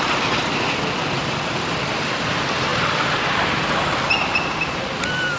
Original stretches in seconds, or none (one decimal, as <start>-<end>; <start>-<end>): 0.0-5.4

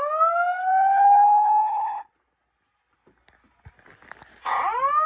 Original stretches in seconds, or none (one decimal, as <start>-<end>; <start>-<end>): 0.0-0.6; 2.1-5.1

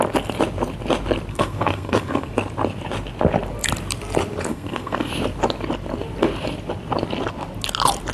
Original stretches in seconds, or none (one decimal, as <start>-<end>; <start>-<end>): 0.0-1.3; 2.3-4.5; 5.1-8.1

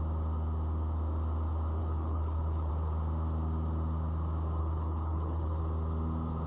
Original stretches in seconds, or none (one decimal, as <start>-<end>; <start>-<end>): 0.0-1.8; 2.7-4.6; 5.6-6.5

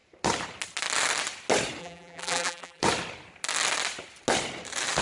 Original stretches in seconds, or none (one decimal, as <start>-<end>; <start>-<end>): 0.0-1.8; 2.8-5.0

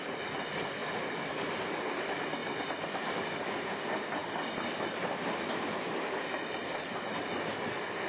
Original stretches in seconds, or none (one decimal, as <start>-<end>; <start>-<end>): 0.0-2.4; 3.4-8.1

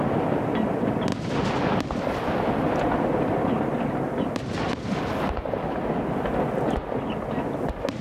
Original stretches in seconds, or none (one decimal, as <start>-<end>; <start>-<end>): 0.0-8.0